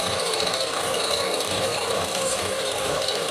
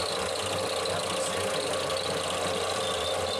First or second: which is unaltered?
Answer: second